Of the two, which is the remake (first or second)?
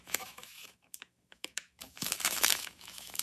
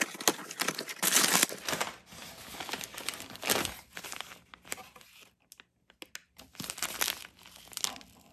first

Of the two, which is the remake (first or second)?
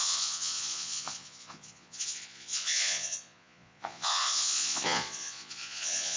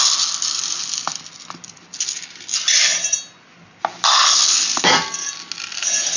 first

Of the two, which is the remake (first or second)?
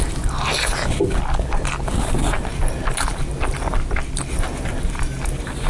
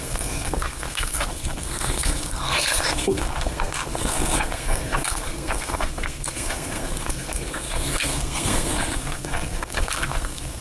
second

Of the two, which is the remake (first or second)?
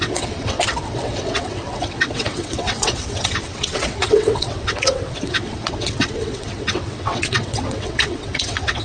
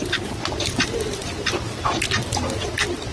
first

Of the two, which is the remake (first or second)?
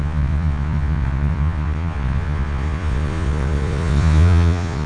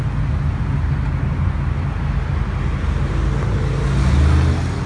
first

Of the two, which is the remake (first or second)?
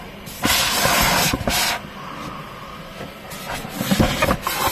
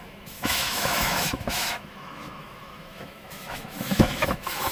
second